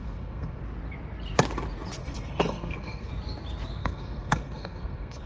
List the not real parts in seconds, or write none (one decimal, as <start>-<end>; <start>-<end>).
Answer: 0.0-0.6; 2.0-3.1; 3.8-5.3